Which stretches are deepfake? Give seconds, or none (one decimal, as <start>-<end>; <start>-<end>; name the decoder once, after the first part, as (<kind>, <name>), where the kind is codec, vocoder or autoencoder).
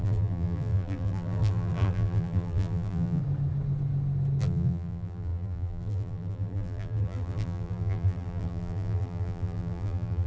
0.0-3.2 (vocoder, BigVGAN v2); 4.4-10.3